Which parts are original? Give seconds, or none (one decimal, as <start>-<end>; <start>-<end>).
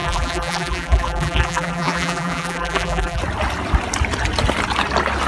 3.2-5.3